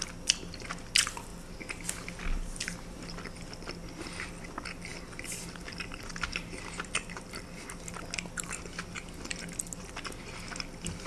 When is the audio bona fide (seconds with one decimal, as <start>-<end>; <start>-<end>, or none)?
0.0-11.1